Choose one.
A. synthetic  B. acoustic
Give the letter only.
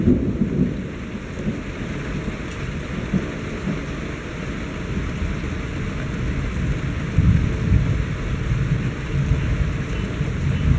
B